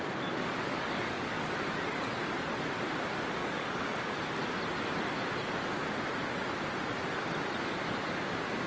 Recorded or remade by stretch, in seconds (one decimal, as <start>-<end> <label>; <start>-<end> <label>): 0.0-0.6 recorded; 0.6-1.6 remade; 1.6-3.4 recorded; 3.4-4.1 remade; 4.1-8.7 recorded